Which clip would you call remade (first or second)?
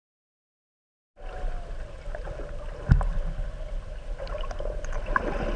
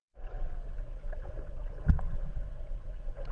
second